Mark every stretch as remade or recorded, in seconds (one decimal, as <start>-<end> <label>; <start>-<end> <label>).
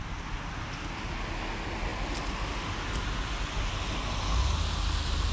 0.0-5.3 recorded